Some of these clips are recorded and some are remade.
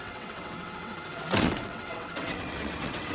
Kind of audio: remade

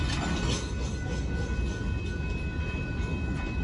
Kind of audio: recorded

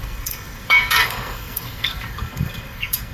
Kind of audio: remade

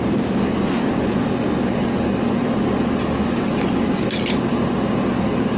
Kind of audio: recorded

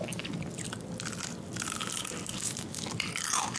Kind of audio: recorded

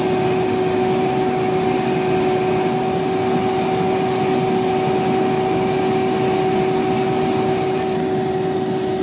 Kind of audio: recorded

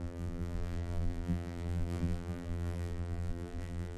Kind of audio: remade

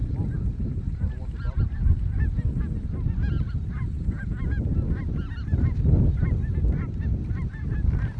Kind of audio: recorded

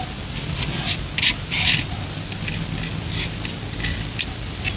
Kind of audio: recorded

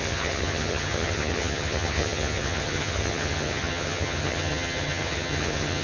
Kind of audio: remade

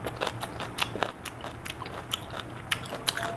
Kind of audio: recorded